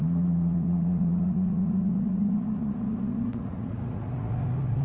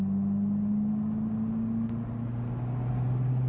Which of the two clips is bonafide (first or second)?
second